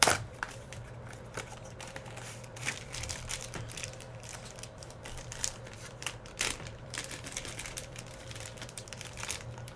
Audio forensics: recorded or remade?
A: remade